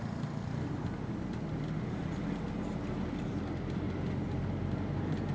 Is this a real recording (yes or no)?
yes